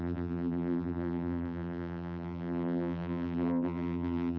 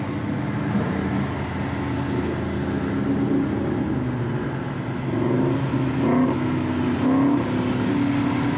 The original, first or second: second